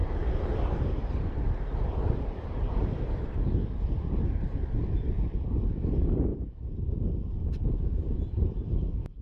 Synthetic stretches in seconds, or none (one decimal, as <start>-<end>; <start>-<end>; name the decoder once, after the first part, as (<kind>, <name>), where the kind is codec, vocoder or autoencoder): 6.3-8.7 (vocoder, BigVGAN v2)